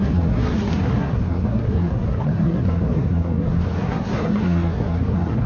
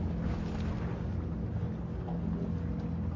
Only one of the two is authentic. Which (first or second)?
second